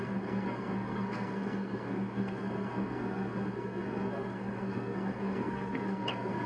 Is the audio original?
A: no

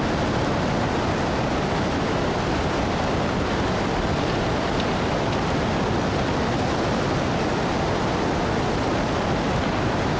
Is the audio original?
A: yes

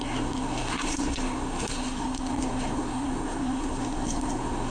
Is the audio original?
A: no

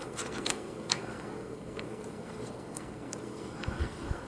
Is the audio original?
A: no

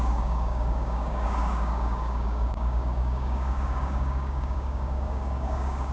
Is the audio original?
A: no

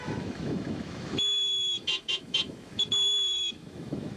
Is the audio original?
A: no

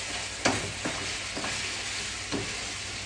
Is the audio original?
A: yes